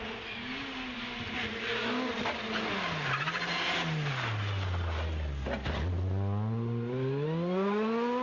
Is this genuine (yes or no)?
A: yes